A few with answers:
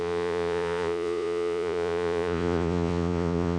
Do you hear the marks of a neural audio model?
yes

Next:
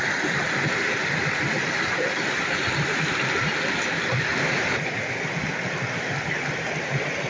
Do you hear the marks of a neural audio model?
no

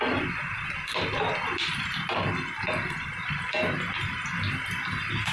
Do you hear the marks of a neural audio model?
no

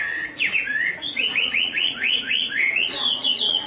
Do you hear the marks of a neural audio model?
yes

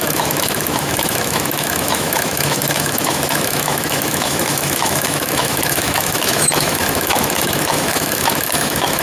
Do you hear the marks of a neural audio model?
yes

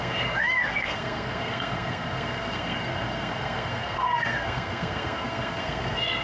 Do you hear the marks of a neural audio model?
yes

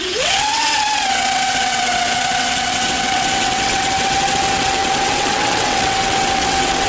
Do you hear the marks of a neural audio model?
yes